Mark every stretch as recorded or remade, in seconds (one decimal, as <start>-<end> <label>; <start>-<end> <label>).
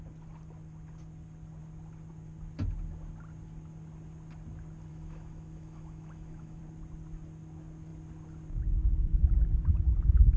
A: 0.0-4.9 recorded; 4.9-6.6 remade; 6.6-10.4 recorded